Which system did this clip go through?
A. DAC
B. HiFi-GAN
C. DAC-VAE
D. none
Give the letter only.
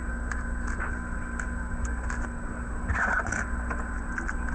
D